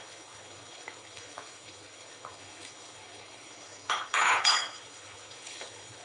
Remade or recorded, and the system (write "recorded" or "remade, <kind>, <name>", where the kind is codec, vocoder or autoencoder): remade, codec, HILCodec